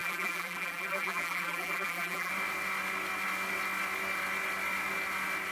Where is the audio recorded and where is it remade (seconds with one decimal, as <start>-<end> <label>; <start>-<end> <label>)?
0.0-2.3 remade; 2.3-5.5 recorded